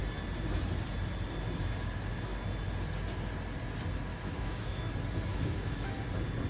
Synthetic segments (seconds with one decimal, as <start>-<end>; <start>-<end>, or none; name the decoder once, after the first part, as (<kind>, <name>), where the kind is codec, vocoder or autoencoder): 4.1-4.8 (autoencoder, DAC-VAE); 5.3-6.0